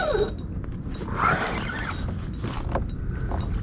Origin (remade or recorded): recorded